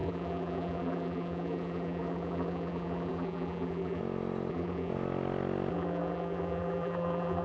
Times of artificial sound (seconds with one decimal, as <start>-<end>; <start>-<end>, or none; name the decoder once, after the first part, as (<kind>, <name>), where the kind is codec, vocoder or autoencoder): 0.0-4.0 (vocoder, BigVGAN v2); 4.5-4.9; 5.7-7.4